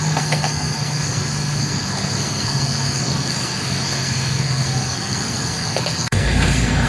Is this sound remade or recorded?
remade